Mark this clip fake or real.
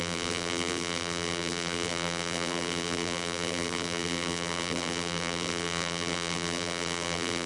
fake